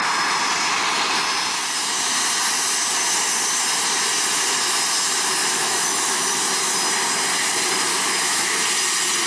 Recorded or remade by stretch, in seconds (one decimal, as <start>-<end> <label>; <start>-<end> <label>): 0.0-5.4 recorded; 5.4-6.4 remade; 6.4-7.9 recorded; 7.9-8.6 remade; 8.6-9.3 recorded